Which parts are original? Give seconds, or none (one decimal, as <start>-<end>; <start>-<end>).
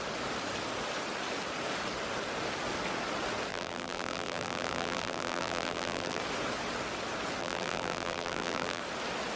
0.0-3.5; 6.2-7.4; 8.8-9.4